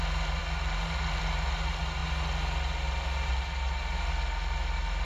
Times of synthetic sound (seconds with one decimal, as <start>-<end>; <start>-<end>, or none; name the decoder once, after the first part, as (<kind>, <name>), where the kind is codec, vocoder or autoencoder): none